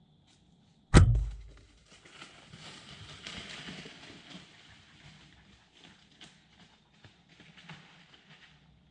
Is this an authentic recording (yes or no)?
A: yes